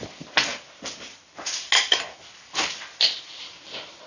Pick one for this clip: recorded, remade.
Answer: recorded